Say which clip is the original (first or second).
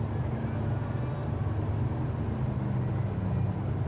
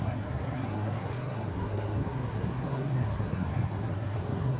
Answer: first